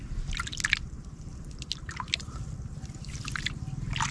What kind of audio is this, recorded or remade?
recorded